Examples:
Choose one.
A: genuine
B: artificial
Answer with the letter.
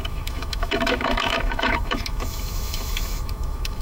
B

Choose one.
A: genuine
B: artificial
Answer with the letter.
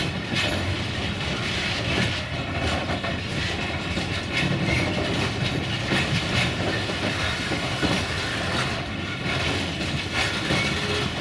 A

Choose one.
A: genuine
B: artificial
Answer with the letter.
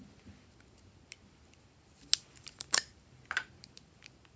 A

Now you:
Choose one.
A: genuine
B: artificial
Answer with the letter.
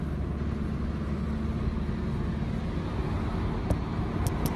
A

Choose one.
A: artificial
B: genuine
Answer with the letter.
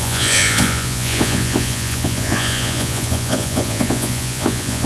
A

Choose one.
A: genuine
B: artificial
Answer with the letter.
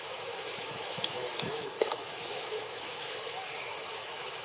B